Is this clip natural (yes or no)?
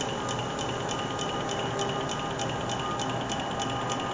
yes